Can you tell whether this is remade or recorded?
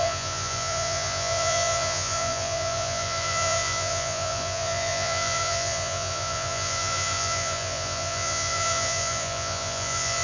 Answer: remade